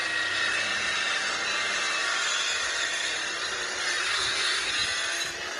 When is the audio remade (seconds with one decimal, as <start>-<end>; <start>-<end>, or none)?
4.0-4.7